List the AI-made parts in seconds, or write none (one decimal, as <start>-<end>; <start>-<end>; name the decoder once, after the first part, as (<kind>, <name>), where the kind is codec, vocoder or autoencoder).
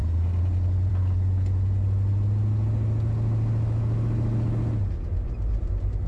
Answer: none